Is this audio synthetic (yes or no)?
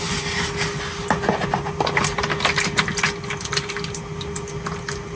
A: no